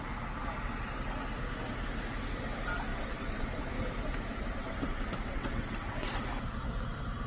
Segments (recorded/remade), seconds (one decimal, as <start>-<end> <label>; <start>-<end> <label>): 0.0-2.9 recorded; 2.9-3.7 remade; 3.7-4.4 recorded; 4.4-6.1 remade; 6.1-7.3 recorded